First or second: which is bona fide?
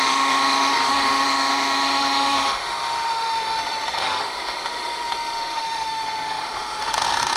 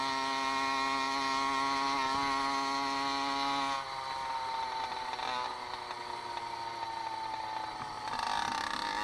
second